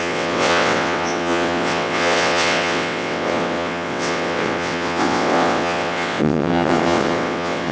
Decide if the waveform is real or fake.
fake